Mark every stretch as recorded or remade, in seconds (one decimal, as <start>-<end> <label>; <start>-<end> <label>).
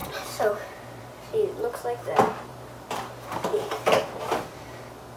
0.0-1.0 remade; 1.0-2.5 recorded; 2.5-4.2 remade; 4.2-5.2 recorded